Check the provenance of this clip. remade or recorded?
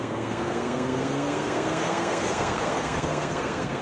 remade